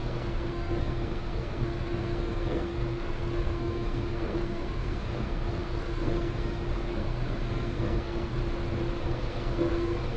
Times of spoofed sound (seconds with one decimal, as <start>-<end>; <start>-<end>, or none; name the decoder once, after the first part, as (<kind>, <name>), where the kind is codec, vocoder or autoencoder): 0.0-8.4 (codec, SNAC); 9.0-10.2